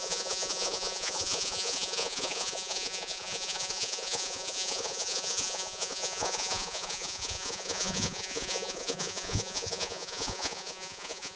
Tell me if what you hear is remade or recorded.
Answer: remade